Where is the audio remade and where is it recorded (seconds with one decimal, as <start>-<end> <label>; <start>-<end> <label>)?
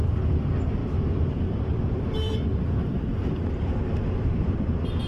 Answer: 0.0-5.1 remade